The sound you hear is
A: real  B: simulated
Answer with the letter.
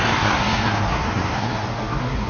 B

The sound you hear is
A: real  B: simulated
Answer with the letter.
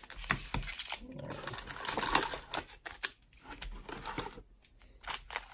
A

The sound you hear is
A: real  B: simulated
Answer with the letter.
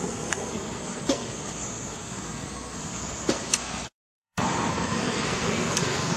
B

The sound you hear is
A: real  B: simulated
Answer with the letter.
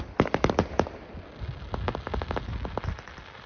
A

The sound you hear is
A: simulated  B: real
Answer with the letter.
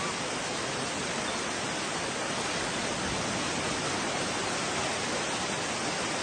B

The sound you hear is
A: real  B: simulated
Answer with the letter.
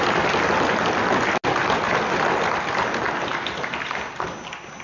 A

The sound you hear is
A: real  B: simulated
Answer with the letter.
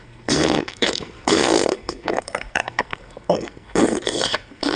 B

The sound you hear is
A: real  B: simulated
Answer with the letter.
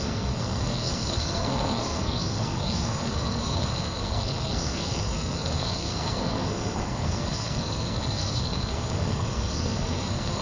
B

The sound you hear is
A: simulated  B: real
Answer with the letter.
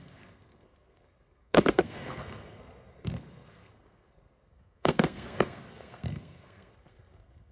A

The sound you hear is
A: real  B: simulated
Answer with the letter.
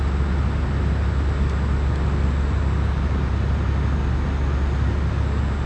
A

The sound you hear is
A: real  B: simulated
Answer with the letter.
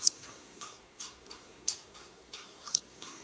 B